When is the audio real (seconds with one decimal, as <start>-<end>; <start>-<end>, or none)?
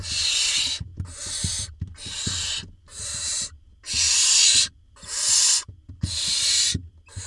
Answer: 0.0-7.3